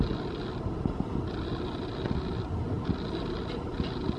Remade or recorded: recorded